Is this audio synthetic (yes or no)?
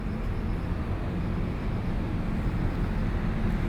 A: no